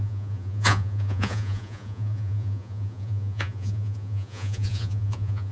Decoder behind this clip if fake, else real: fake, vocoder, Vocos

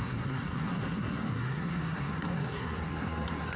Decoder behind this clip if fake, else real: fake, codec, SNAC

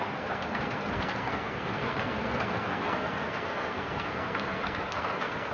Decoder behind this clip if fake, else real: fake, codec, SNAC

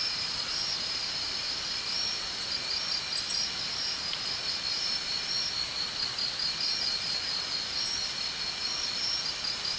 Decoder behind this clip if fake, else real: real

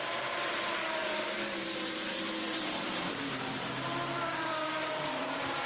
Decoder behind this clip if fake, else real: fake, vocoder, BigVGAN v2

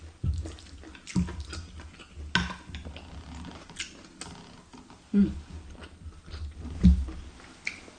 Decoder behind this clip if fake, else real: real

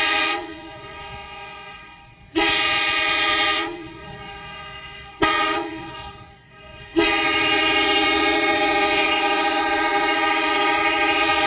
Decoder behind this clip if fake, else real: fake, vocoder, Vocos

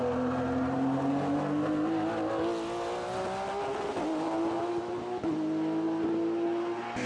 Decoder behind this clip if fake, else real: real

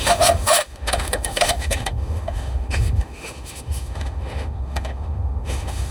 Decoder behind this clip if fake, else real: fake, autoencoder, DAC-VAE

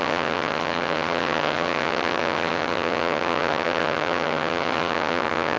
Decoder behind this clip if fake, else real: fake, vocoder, HiFi-GAN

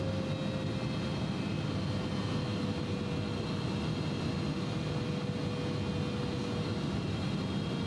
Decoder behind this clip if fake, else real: real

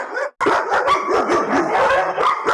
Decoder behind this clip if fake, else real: real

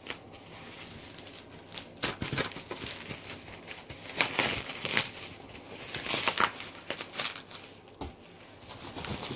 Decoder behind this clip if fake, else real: real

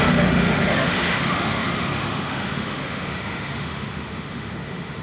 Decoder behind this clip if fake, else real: fake, autoencoder, DAC-VAE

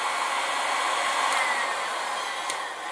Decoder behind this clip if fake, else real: real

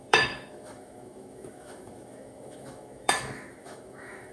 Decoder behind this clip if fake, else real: fake, autoencoder, DAC-VAE